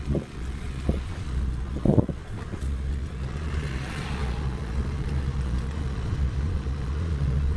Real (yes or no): no